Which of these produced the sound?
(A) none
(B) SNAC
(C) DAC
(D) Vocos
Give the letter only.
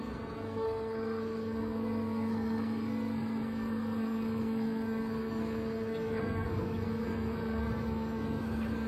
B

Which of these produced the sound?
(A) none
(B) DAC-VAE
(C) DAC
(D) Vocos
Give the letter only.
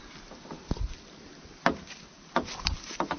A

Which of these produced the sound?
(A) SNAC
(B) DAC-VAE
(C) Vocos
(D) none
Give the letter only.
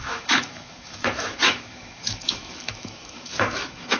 B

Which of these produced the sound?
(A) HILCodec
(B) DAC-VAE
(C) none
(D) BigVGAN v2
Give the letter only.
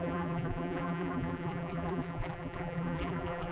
D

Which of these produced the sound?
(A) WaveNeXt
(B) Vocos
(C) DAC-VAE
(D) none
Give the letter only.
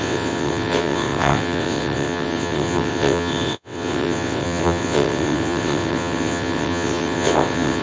A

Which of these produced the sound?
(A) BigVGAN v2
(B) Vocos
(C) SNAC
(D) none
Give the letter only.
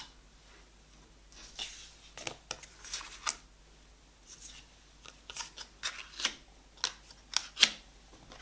D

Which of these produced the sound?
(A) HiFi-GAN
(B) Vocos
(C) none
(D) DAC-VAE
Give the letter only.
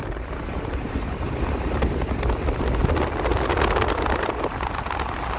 C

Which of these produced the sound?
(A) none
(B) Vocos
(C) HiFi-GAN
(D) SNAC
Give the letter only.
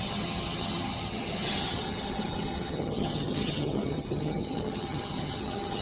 C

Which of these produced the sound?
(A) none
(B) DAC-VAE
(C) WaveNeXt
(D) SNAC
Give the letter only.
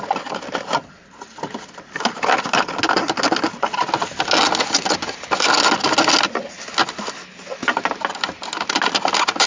A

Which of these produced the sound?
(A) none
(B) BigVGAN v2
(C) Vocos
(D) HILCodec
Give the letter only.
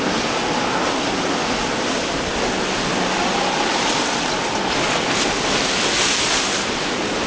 A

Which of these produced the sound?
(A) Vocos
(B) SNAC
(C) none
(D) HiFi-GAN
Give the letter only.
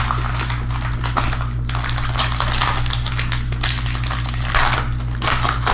C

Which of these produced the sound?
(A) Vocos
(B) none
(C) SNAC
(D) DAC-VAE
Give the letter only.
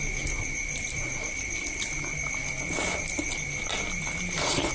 B